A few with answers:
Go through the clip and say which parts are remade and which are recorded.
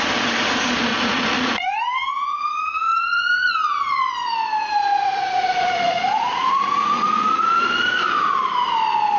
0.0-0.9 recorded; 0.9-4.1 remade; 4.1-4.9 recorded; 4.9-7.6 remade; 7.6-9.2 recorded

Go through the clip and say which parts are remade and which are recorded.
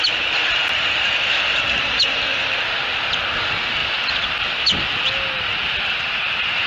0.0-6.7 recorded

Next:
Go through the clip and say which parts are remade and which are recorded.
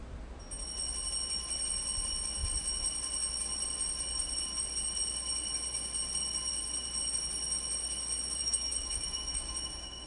0.0-8.4 recorded; 8.4-10.1 remade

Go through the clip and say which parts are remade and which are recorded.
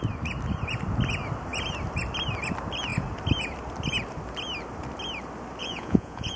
0.0-5.6 recorded; 5.6-6.4 remade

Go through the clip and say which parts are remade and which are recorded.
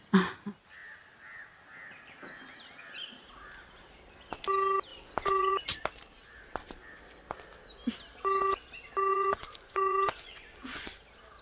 0.0-4.9 recorded; 4.9-5.5 remade; 5.5-9.1 recorded; 9.1-11.0 remade; 11.0-11.4 recorded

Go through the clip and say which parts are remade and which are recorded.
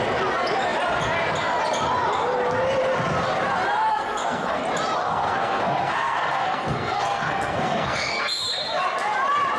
0.0-3.9 recorded; 3.9-4.6 remade; 4.6-5.0 recorded; 5.0-8.4 remade; 8.4-9.6 recorded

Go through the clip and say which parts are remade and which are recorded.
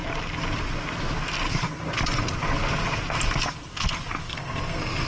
0.0-4.2 recorded; 4.2-5.1 remade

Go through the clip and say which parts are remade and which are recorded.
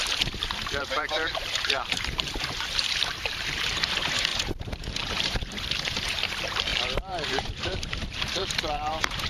0.0-9.3 remade